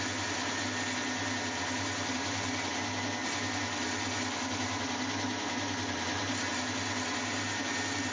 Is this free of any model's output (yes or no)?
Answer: yes